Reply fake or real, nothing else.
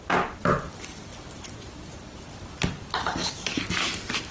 real